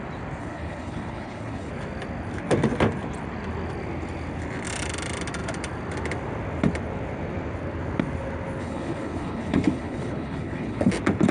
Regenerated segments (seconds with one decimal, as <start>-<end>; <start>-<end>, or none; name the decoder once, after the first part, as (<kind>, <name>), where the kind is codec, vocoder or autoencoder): 0.4-1.7 (codec, HILCodec); 8.6-10.9